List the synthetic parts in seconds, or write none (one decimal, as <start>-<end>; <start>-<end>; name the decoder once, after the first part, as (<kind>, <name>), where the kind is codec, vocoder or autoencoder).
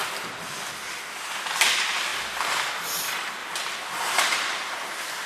none